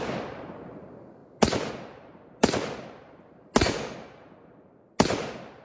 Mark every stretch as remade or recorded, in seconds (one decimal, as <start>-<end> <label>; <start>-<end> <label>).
0.0-5.6 recorded